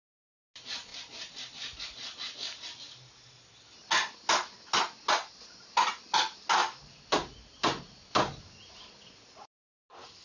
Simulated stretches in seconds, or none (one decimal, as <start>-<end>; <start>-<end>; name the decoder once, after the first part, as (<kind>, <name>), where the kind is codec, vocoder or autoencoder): none